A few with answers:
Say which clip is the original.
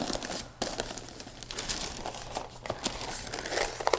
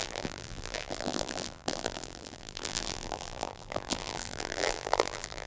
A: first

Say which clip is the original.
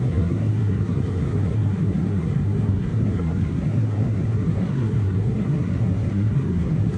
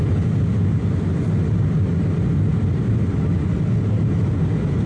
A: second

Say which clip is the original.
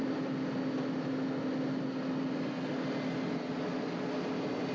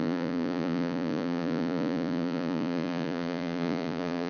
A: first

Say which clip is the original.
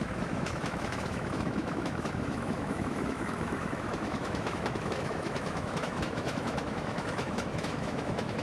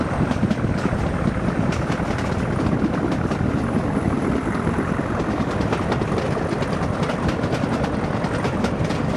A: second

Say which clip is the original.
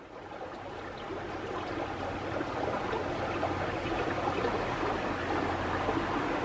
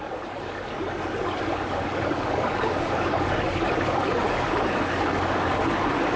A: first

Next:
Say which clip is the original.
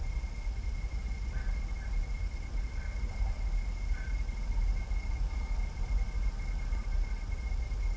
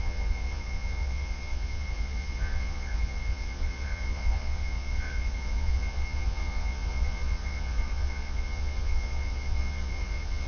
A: first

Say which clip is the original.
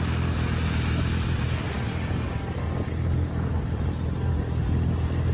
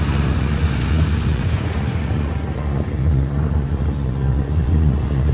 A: first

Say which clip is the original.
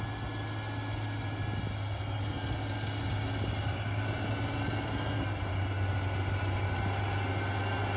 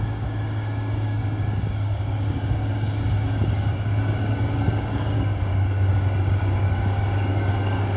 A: first